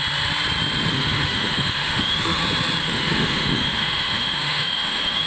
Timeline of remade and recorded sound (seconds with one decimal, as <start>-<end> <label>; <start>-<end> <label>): 0.0-0.9 recorded; 0.9-2.4 remade; 2.4-2.8 recorded; 2.8-5.3 remade